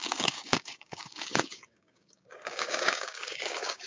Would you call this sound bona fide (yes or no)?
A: no